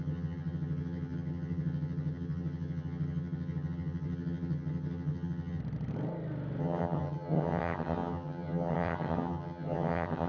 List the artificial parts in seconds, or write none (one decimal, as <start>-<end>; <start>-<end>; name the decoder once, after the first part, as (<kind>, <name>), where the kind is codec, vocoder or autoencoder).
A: 0.0-5.6 (vocoder, HiFi-GAN); 6.6-10.3